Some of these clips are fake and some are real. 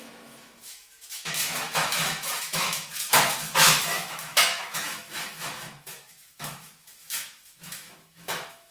fake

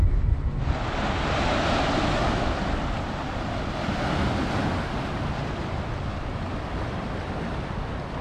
real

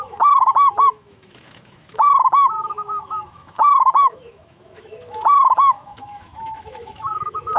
fake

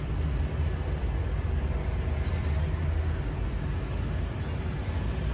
real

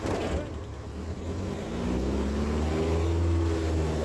real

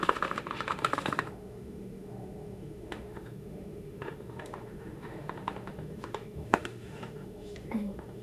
fake